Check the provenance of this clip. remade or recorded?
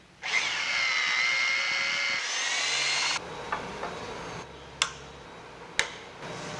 recorded